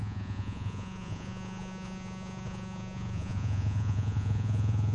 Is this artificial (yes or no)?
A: yes